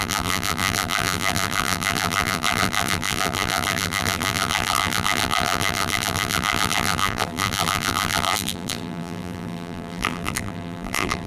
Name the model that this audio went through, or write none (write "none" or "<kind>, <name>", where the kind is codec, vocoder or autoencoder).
vocoder, BigVGAN v2